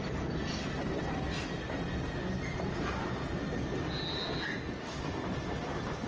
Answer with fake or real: real